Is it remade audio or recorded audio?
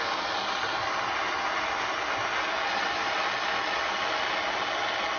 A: recorded